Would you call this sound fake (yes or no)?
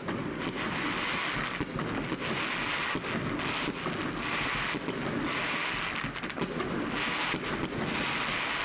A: no